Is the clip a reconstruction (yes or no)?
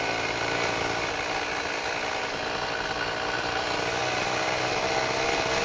no